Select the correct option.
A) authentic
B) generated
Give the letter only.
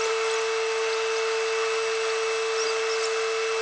A